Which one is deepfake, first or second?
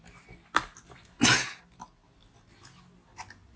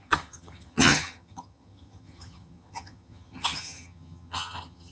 second